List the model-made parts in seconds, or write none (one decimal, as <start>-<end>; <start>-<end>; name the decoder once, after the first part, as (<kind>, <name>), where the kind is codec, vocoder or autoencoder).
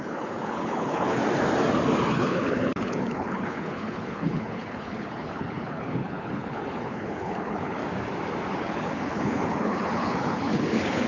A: 0.0-1.2 (codec, HILCodec); 2.1-7.8; 8.5-11.1